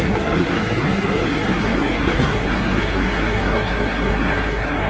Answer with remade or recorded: remade